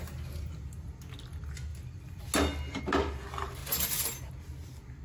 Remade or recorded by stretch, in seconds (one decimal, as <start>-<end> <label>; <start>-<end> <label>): 0.0-5.0 recorded